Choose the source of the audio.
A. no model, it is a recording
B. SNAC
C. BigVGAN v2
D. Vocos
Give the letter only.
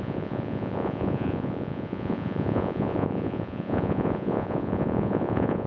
D